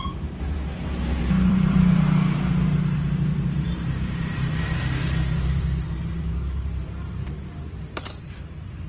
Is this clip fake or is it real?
fake